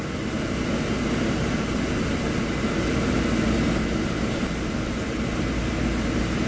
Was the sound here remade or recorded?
recorded